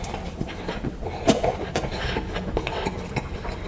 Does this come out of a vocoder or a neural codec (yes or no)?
no